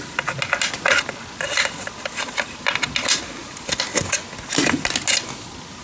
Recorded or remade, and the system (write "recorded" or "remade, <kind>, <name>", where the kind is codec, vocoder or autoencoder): recorded